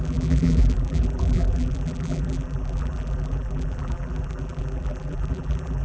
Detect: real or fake fake